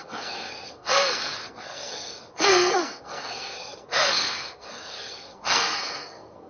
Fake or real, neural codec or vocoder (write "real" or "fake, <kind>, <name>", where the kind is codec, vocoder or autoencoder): fake, codec, SNAC